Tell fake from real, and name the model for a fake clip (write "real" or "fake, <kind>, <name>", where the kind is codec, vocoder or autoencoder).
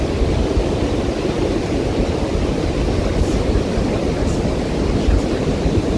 real